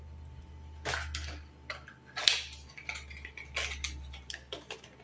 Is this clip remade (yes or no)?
no